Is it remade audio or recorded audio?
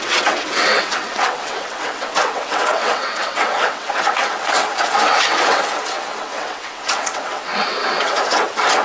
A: remade